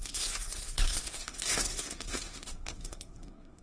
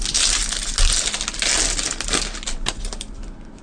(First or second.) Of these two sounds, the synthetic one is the first